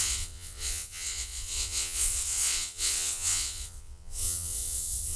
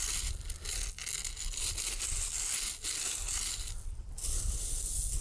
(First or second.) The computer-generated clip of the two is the first